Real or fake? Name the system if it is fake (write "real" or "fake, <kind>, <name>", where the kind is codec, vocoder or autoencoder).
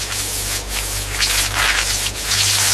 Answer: real